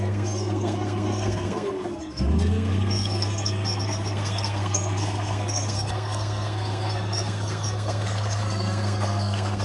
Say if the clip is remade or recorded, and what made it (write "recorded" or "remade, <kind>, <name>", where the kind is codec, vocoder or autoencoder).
remade, codec, SNAC